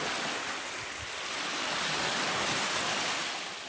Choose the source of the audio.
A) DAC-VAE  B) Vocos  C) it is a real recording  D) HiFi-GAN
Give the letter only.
C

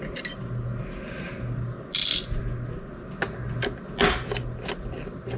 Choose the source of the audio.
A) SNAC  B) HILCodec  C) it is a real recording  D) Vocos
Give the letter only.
C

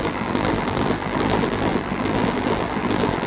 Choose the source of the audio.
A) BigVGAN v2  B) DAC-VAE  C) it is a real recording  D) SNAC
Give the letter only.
A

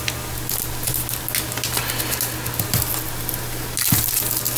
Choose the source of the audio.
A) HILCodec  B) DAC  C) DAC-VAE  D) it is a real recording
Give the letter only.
D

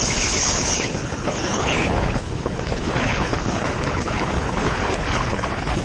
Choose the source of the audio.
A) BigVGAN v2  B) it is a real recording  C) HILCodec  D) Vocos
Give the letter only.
C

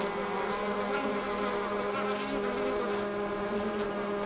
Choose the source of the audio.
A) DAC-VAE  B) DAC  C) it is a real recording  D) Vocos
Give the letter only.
C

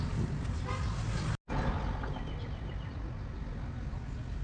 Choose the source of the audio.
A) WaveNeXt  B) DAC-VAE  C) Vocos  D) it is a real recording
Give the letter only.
D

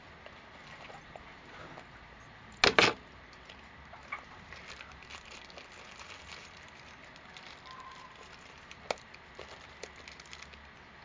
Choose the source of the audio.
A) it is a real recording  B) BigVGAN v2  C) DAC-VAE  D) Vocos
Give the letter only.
A